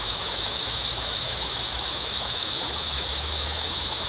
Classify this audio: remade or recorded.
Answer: remade